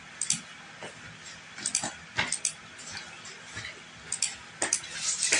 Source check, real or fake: real